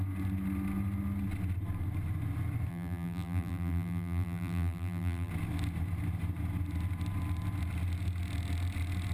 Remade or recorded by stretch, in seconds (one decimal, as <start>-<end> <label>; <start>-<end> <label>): 0.0-2.7 recorded; 2.7-5.3 remade; 5.3-9.1 recorded